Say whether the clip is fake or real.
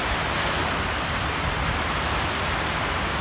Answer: real